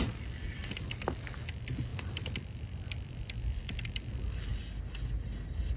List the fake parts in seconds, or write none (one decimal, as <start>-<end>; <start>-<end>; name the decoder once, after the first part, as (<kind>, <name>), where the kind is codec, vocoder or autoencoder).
none